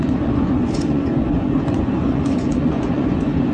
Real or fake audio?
fake